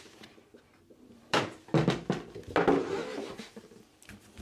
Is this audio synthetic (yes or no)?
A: no